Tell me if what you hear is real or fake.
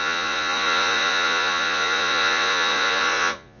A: fake